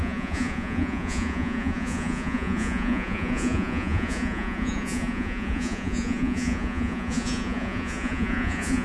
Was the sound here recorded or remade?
remade